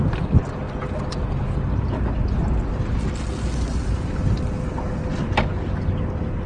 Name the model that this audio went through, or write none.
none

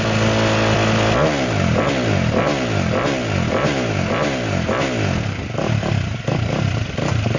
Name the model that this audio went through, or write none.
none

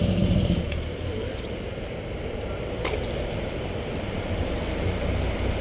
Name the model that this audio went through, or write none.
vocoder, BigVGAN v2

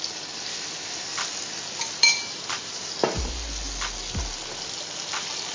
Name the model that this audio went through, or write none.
none